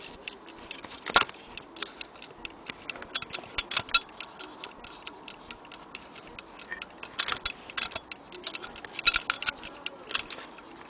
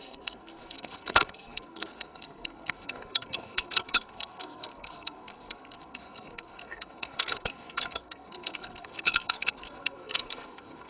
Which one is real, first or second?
first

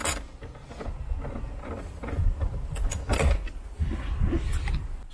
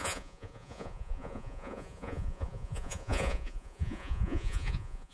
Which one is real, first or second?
first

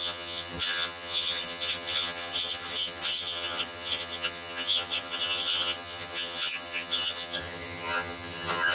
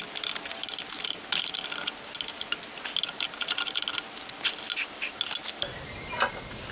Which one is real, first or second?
second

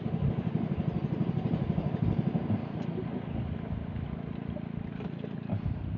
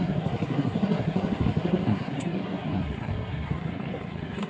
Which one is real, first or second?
first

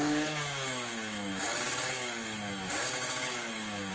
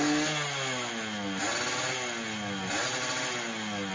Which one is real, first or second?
second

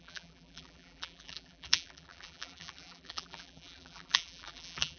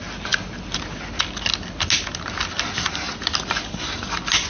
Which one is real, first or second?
second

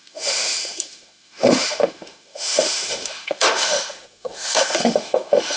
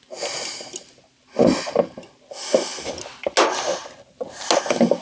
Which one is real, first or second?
second